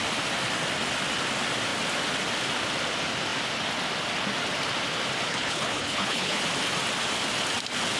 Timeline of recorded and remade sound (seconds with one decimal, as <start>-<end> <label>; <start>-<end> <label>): 0.0-5.3 recorded; 5.3-6.4 remade; 6.4-8.0 recorded